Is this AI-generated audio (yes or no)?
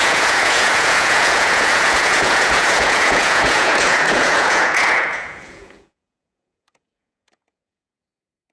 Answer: yes